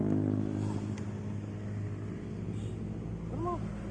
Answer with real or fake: real